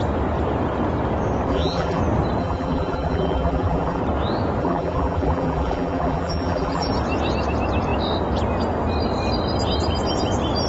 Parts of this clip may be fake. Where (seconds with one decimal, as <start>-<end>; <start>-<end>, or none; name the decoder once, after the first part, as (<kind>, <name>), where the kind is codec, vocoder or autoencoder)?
1.5-2.0 (vocoder, BigVGAN v2); 2.4-4.0; 4.6-6.9